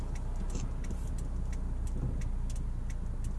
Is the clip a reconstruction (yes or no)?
no